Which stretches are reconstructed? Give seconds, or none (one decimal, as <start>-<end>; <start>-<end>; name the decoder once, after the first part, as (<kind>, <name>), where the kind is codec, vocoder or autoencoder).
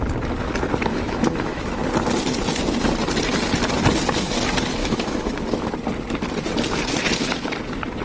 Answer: 0.9-1.8 (autoencoder, DAC-VAE); 4.8-5.7